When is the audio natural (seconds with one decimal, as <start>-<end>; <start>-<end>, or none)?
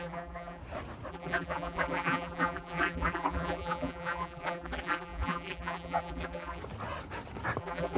0.6-1.1; 6.6-7.6